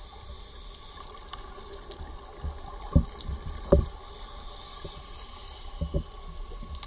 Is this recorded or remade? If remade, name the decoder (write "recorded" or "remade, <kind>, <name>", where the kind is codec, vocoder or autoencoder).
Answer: recorded